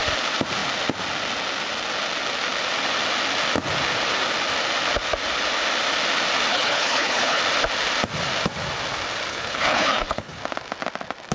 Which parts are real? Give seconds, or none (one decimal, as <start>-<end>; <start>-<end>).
0.0-6.5; 7.4-9.3; 10.4-11.3